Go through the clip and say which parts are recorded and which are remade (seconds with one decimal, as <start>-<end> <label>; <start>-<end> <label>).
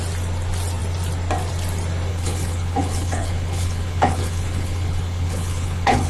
0.0-2.1 recorded; 2.1-6.1 remade